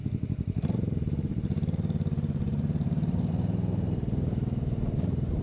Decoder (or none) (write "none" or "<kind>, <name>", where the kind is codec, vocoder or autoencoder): vocoder, BigVGAN v2